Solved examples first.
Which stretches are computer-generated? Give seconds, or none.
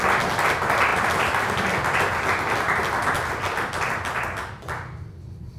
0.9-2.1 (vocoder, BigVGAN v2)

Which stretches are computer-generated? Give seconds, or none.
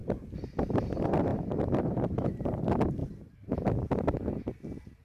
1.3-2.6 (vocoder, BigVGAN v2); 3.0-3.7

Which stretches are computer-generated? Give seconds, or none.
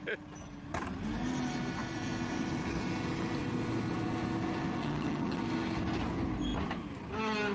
4.8-5.4 (vocoder, HiFi-GAN)